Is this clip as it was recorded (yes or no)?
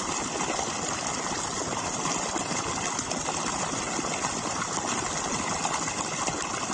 yes